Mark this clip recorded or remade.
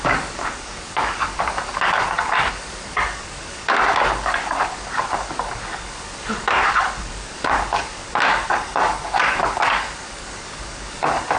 remade